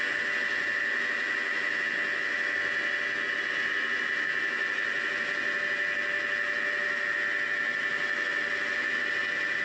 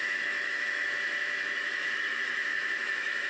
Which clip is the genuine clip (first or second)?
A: first